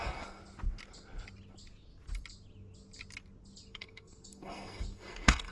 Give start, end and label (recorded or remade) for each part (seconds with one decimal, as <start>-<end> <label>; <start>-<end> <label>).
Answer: 0.0-0.4 remade; 0.4-3.7 recorded; 3.7-5.5 remade